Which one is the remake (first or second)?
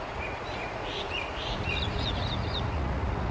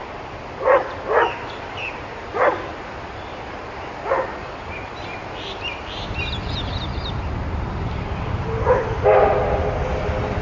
first